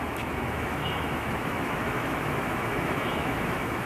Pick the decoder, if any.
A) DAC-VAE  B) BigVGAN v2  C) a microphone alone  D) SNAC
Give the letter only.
A